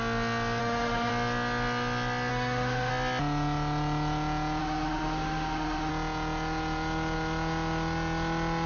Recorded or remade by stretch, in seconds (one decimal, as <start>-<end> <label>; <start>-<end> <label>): 0.0-0.6 recorded; 0.6-1.1 remade; 1.1-2.3 recorded; 2.3-2.9 remade; 2.9-4.6 recorded; 4.6-5.9 remade; 5.9-8.7 recorded